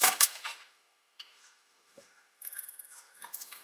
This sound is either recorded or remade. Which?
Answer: remade